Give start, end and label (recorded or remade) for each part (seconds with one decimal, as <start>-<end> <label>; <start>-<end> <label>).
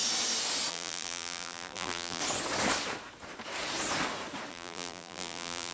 0.0-0.7 recorded; 0.7-2.2 remade; 2.2-4.5 recorded; 4.5-5.7 remade